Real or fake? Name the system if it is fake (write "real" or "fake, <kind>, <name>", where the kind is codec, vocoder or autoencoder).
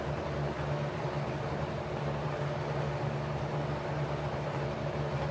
real